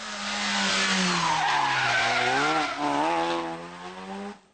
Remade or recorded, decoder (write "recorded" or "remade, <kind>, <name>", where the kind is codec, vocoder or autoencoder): recorded